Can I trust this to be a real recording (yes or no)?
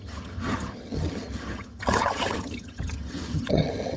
no